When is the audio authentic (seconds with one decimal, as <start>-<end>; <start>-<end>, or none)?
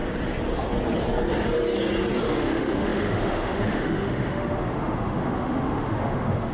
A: 0.0-2.2